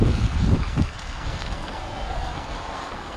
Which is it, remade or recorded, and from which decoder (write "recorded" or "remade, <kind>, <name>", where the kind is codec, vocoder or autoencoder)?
remade, codec, SNAC